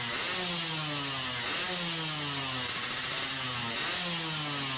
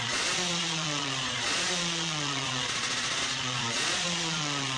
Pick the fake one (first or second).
second